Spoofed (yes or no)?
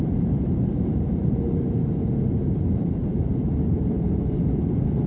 yes